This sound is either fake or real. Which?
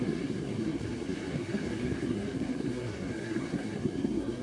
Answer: fake